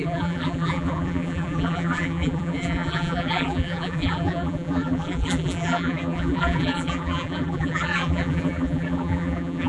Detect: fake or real fake